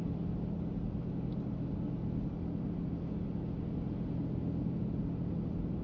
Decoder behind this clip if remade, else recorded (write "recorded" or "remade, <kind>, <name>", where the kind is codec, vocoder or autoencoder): recorded